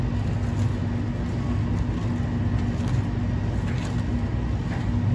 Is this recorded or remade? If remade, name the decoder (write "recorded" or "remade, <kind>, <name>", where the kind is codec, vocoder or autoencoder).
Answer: recorded